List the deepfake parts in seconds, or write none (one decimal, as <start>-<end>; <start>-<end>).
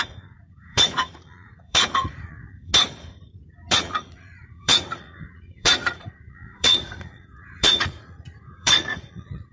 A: 0.0-2.7; 3.7-9.5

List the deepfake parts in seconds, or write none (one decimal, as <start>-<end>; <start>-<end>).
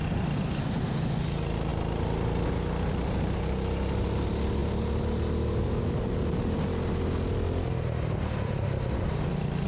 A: none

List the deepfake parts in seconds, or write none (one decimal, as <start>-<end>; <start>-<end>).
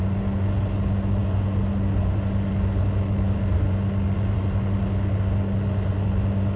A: none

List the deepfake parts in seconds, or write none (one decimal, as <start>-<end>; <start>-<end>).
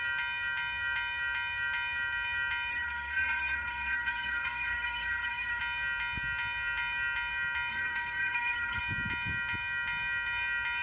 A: 2.7-5.6; 7.7-8.8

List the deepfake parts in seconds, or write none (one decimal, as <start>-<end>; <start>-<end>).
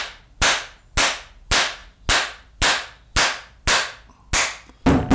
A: none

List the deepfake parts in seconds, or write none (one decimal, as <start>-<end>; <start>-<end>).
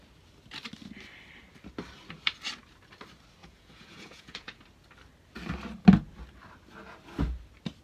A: 3.4-4.6